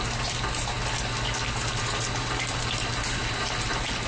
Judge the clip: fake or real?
real